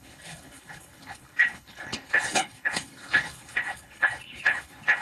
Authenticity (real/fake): fake